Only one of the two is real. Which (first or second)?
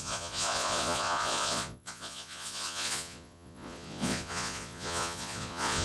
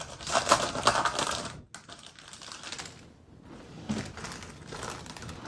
second